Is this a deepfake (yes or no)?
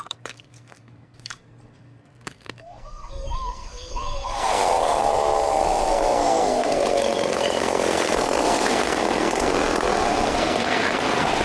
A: yes